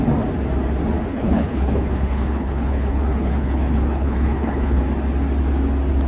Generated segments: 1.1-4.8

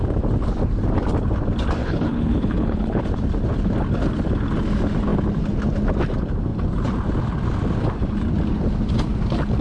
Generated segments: 1.8-3.0

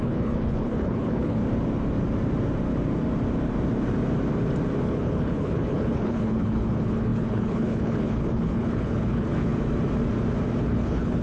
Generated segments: 0.0-1.4; 4.9-9.5; 10.6-11.2

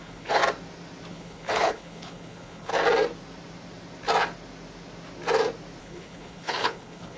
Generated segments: 0.0-0.4; 1.1-2.7; 5.8-7.2